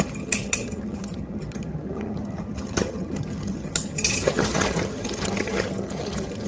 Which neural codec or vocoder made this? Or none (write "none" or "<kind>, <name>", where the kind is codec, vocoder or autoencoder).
vocoder, HiFi-GAN